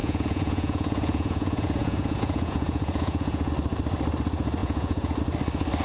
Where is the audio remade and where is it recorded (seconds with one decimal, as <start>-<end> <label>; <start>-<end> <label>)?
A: 0.0-3.5 remade; 3.5-4.6 recorded; 4.6-5.2 remade; 5.2-5.8 recorded